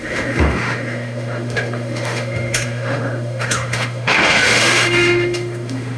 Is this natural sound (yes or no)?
no